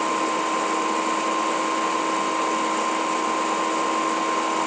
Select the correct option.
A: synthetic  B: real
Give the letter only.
B